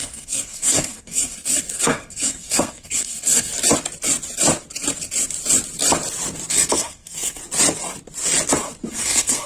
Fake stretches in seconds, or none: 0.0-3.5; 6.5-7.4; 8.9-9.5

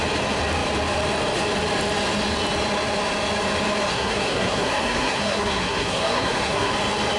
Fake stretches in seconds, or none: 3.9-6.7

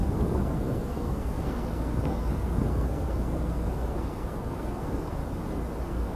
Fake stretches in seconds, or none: 0.0-5.2; 5.8-6.2